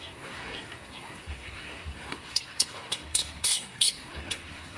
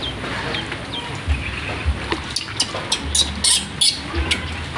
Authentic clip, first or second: second